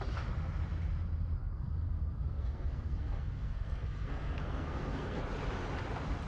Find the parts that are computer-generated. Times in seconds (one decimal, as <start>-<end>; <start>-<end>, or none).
1.4-5.2